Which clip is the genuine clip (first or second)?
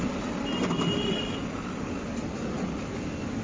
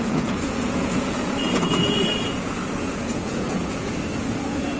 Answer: first